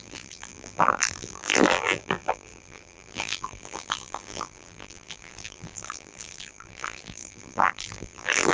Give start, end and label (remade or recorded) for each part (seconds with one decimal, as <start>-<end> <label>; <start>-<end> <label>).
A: 0.0-8.5 remade